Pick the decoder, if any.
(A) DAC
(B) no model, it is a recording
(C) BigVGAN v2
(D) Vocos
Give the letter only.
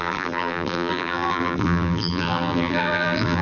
C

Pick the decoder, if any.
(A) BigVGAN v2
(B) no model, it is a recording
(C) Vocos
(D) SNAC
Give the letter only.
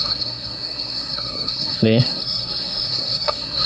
D